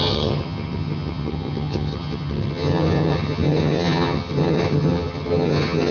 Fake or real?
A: fake